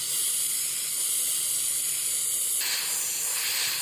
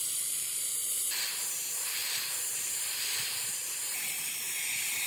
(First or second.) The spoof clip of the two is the second